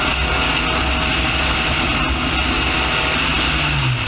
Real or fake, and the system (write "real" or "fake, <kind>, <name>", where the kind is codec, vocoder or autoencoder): real